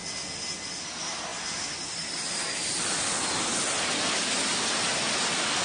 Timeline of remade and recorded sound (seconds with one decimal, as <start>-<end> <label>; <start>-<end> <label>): 0.0-5.6 recorded